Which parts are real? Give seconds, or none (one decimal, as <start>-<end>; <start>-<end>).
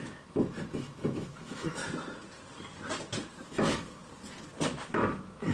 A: 1.8-3.5; 4.0-4.9